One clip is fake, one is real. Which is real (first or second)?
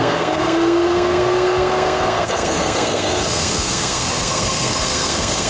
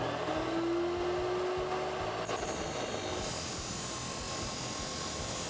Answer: second